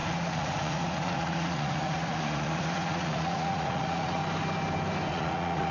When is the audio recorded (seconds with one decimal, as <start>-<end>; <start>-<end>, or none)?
4.2-5.1